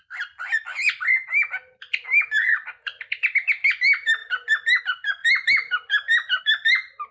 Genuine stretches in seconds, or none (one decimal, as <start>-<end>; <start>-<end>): 0.0-2.4; 3.1-7.1